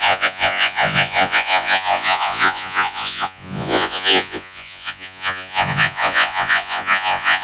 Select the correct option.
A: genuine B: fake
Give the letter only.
B